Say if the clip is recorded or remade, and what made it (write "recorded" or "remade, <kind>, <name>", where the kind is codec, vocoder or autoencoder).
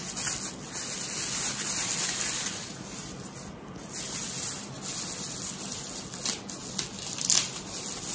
recorded